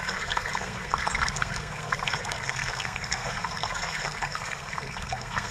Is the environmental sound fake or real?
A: fake